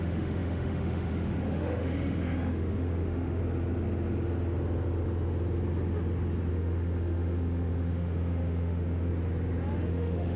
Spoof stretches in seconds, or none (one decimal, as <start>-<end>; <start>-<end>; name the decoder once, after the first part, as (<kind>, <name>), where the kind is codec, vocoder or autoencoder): 0.0-3.4 (autoencoder, DAC-VAE); 6.5-9.1; 9.9-10.4